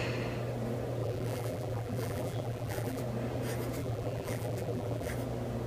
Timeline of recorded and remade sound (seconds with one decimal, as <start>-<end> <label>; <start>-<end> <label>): 0.0-1.0 recorded; 1.0-3.0 remade; 3.0-3.8 recorded; 3.8-5.1 remade; 5.1-5.7 recorded